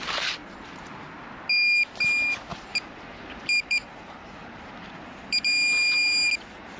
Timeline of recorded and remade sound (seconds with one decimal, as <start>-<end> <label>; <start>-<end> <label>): 0.0-0.4 recorded; 0.4-1.0 remade; 1.0-2.5 recorded; 2.5-6.3 remade; 6.3-6.8 recorded